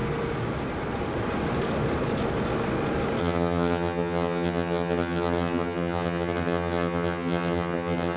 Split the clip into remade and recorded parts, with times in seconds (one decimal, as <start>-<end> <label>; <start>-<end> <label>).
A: 0.0-3.2 recorded; 3.2-8.2 remade